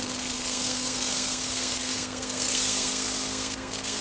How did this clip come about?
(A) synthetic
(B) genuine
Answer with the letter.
A